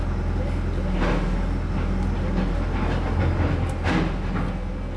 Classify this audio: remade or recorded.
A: recorded